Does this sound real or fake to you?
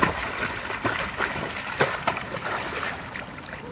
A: real